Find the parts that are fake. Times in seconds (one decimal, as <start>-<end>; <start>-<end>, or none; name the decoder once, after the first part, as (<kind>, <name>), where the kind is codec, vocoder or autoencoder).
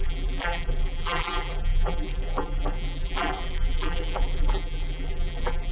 0.0-5.7 (vocoder, BigVGAN v2)